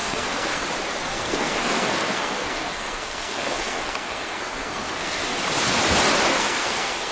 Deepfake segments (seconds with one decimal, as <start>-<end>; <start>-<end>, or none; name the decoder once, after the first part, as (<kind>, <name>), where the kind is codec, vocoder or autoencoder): 0.0-0.7 (codec, SNAC); 1.1-5.4; 6.3-7.1